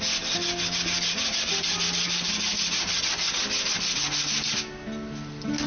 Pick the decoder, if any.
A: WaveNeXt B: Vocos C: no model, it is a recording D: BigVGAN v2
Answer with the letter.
C